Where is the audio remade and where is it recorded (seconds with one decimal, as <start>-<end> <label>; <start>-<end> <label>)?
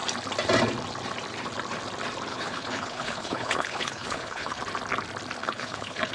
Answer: 0.0-2.3 recorded; 2.3-4.6 remade; 4.6-5.4 recorded; 5.4-6.1 remade